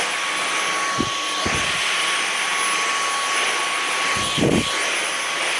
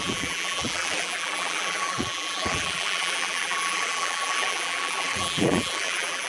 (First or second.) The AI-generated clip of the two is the second